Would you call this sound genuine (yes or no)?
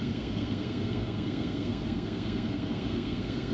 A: no